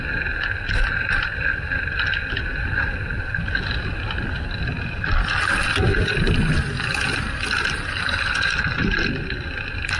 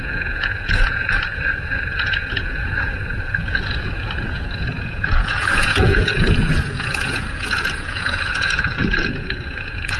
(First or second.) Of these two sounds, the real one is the first